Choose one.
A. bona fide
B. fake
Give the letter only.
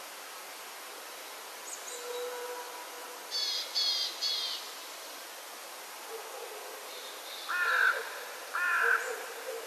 A